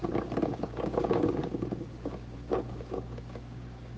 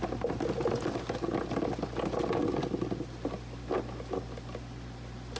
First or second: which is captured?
second